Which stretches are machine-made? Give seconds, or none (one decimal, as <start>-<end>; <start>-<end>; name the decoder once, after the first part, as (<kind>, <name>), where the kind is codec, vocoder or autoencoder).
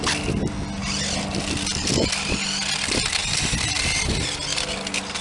none